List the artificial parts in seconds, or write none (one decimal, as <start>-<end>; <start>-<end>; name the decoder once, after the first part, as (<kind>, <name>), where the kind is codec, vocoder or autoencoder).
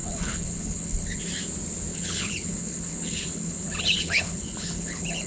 0.0-1.2 (codec, HILCodec); 1.9-5.3